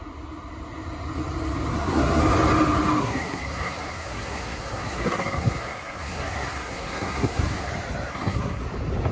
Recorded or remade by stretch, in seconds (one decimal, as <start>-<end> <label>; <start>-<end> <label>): 0.0-1.7 recorded; 1.7-2.2 remade; 2.2-3.0 recorded; 3.0-7.7 remade; 7.7-8.1 recorded; 8.1-8.6 remade; 8.6-9.1 recorded